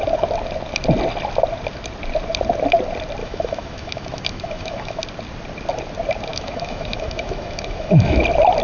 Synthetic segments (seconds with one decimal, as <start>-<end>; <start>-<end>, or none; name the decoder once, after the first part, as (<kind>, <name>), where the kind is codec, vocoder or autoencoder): 3.2-5.0 (autoencoder, DAC-VAE); 6.3-8.2